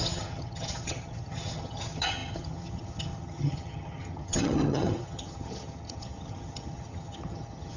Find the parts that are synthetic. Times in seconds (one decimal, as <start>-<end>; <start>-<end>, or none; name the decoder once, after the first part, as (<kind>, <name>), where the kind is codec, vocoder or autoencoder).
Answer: 0.0-7.8 (vocoder, HiFi-GAN)